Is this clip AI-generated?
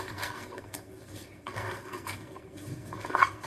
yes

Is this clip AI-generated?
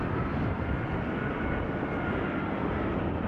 no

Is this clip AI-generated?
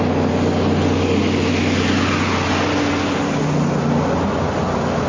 no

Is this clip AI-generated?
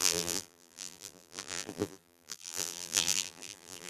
yes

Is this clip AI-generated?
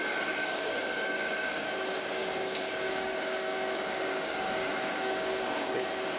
yes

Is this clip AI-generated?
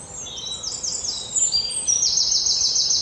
no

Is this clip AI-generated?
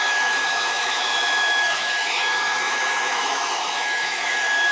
yes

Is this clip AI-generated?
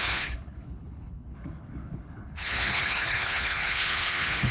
yes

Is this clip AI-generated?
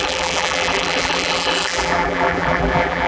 yes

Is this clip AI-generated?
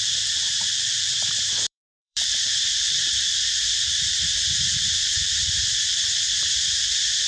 yes